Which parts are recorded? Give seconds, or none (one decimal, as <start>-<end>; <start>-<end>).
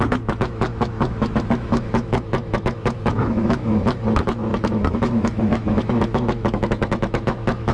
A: none